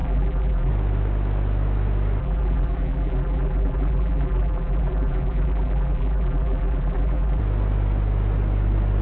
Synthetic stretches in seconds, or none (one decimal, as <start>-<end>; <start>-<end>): 0.0-0.7; 2.2-7.4